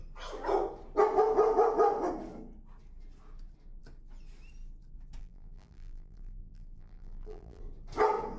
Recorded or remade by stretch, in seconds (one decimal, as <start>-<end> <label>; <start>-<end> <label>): 0.0-5.2 recorded; 5.2-7.6 remade; 7.6-8.4 recorded